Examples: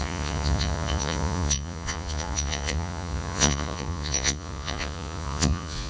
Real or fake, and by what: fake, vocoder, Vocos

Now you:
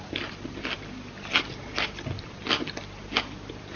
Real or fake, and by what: real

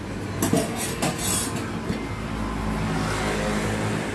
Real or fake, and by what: real